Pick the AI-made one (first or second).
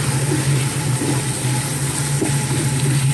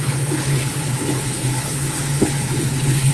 second